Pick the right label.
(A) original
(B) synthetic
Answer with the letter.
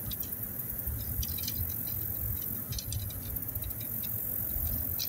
A